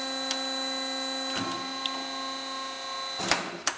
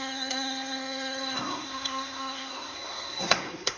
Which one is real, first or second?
first